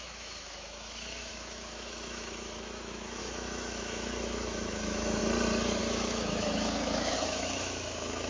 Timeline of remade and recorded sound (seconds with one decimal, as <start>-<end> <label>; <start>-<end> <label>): 0.0-5.2 remade; 5.2-5.8 recorded; 5.8-8.3 remade